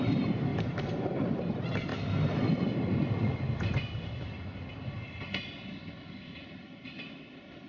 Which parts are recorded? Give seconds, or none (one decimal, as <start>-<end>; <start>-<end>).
0.0-0.5; 1.2-7.7